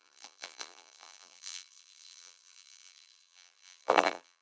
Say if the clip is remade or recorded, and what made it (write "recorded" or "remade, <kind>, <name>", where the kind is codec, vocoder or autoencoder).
remade, vocoder, BigVGAN v2